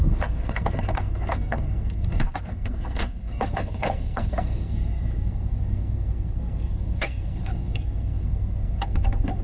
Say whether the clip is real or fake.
fake